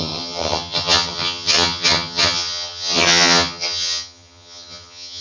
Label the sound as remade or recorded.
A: remade